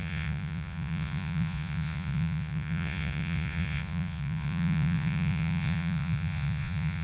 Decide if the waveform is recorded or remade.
remade